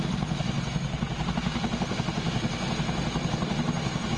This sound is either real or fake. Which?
real